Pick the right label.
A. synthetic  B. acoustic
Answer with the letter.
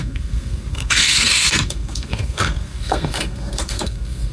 A